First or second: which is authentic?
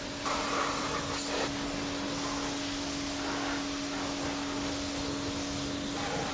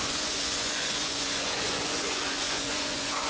first